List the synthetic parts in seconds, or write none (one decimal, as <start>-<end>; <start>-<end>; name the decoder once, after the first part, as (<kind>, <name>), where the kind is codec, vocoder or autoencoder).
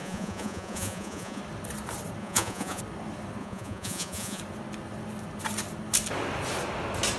0.0-1.4 (vocoder, Vocos); 2.2-2.8; 3.4-4.4